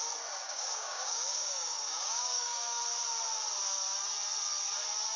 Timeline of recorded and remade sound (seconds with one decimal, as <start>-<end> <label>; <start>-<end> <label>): 0.0-0.4 recorded; 0.4-2.8 remade; 2.8-5.2 recorded